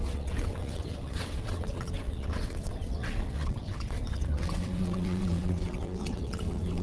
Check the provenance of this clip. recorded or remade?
remade